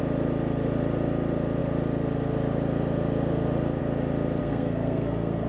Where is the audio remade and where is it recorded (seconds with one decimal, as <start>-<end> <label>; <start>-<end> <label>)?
0.0-4.4 recorded; 4.4-5.5 remade